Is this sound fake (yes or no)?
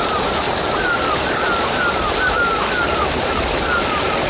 no